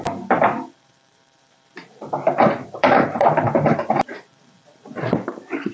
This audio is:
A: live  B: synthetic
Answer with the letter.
B